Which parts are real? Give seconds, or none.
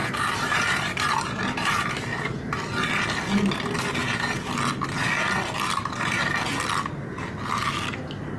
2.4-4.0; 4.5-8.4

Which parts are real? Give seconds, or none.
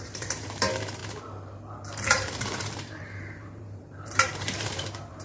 none